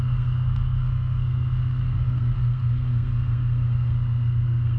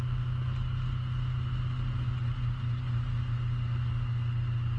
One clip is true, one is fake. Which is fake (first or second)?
first